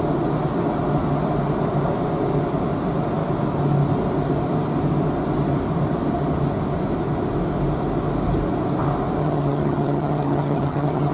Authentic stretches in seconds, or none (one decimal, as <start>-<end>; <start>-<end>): 0.0-9.2

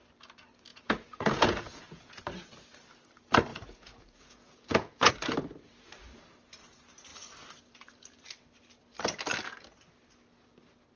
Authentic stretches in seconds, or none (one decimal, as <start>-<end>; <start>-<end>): 0.0-0.7; 2.2-3.5; 5.1-11.0

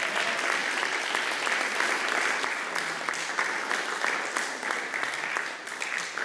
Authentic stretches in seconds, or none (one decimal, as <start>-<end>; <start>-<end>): 0.0-6.2

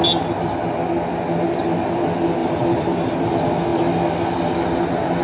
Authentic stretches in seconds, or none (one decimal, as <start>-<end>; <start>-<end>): 0.0-2.4; 3.1-5.2

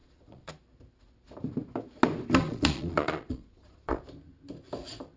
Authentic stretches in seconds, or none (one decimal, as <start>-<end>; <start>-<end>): 0.5-2.4; 4.0-5.2

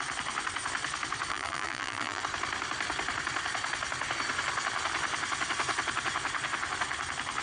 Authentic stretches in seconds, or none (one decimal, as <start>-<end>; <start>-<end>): 0.0-1.3; 2.2-7.4